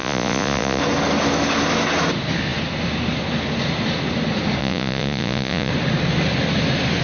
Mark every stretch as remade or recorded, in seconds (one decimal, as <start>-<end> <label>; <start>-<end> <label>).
0.0-0.8 remade; 0.8-4.6 recorded; 4.6-5.7 remade; 5.7-7.0 recorded